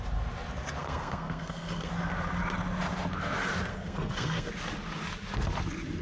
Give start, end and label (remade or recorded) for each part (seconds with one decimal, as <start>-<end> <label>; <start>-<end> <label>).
0.0-0.8 recorded; 0.8-1.9 remade; 1.9-3.7 recorded; 3.7-4.5 remade; 4.5-6.0 recorded